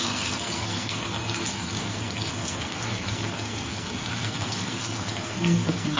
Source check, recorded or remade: remade